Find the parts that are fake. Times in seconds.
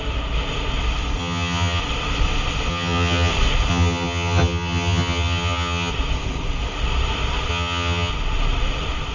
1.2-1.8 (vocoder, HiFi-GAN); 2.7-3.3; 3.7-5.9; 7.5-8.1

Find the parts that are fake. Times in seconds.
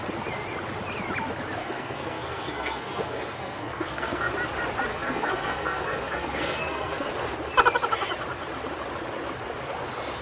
1.6-4.3 (codec, SNAC); 4.9-7.1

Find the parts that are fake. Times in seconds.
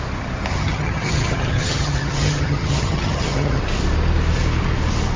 0.5-3.6 (vocoder, HiFi-GAN)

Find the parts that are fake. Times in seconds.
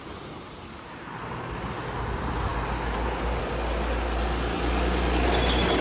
none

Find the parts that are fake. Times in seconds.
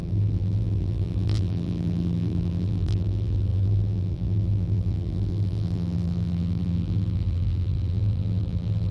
0.0-8.9 (vocoder, BigVGAN v2)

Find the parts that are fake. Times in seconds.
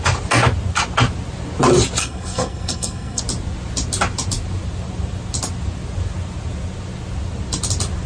2.0-3.2 (codec, SNAC)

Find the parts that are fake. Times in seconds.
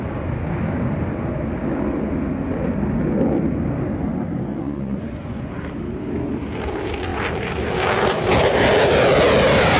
4.5-5.5 (vocoder, Vocos)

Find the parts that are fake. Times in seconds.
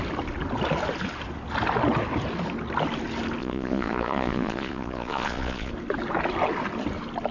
3.4-5.7 (vocoder, Vocos)